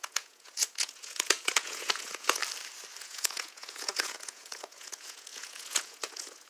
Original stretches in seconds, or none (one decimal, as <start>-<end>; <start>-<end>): 2.4-3.0